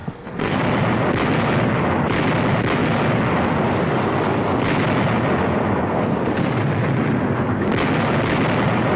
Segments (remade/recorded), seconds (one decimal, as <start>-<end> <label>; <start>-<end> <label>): 0.0-0.6 remade; 0.6-9.0 recorded